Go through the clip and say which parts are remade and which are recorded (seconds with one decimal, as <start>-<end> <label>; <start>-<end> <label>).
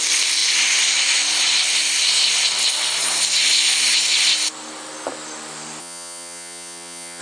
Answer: 0.0-5.8 recorded; 5.8-7.2 remade